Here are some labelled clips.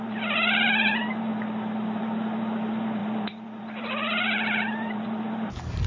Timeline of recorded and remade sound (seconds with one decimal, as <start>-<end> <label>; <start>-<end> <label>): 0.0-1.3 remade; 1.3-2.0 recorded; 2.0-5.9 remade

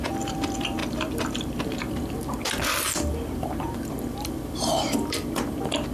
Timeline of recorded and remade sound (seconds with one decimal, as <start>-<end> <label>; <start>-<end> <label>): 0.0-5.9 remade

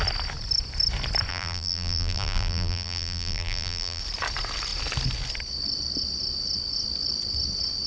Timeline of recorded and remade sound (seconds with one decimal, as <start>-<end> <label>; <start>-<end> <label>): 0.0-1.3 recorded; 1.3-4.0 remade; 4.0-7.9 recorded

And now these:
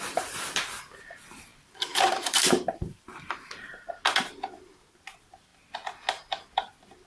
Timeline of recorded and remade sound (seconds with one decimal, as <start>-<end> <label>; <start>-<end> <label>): 0.0-1.5 recorded; 1.5-3.9 remade; 3.9-7.1 recorded

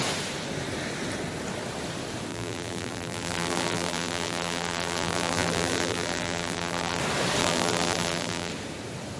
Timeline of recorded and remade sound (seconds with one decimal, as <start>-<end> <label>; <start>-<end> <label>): 0.0-2.3 recorded; 2.3-7.0 remade; 7.0-7.4 recorded; 7.4-8.5 remade; 8.5-9.2 recorded

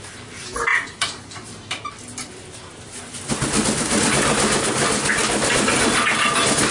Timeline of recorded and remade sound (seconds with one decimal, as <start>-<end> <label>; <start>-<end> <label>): 0.0-0.7 recorded; 0.7-1.9 remade; 1.9-6.7 recorded